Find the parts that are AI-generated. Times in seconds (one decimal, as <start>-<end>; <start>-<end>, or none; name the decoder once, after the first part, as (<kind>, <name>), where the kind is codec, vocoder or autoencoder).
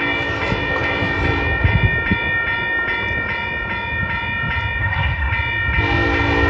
4.8-5.3 (codec, SNAC)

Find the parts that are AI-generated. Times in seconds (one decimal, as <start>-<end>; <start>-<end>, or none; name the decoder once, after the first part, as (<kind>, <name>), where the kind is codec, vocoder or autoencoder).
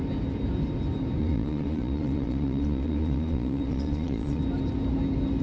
1.2-4.4 (vocoder, Vocos)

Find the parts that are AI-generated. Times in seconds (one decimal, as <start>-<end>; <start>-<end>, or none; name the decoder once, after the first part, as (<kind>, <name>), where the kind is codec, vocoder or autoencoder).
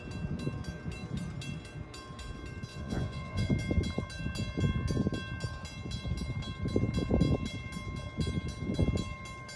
2.7-3.5 (vocoder, Vocos)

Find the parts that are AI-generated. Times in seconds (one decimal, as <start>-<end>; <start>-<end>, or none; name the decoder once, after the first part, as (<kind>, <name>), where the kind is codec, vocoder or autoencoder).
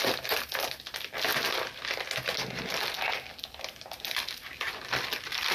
none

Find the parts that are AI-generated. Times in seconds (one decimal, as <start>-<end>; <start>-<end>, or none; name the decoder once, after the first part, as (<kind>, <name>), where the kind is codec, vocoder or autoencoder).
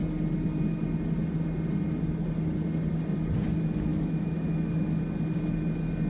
3.9-5.0 (autoencoder, DAC-VAE)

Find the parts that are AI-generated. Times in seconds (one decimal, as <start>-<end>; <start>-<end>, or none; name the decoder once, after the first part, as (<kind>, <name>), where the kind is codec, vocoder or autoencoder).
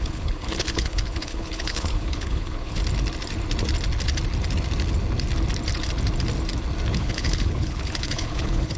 0.0-2.8 (codec, HILCodec); 6.9-8.8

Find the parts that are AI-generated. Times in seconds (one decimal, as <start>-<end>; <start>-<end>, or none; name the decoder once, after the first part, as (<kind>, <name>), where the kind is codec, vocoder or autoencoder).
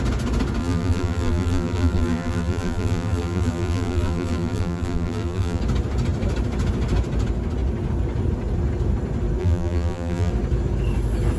0.6-5.6 (vocoder, BigVGAN v2); 9.4-10.3